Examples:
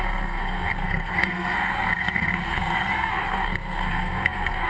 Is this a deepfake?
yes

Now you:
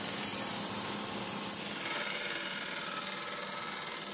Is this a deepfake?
no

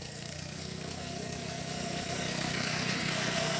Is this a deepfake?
yes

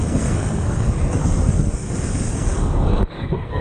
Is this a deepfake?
yes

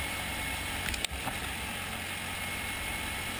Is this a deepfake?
no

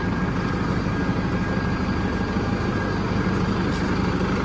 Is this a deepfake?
no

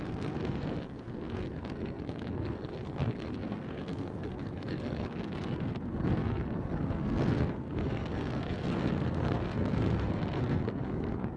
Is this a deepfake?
yes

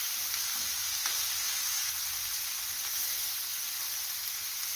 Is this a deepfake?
no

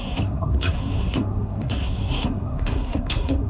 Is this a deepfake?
yes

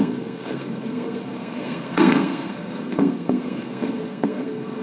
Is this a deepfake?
yes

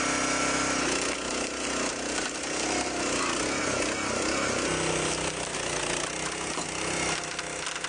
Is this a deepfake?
no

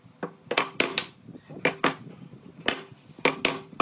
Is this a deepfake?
no